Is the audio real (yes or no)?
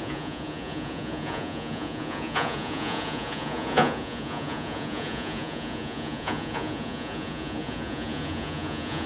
no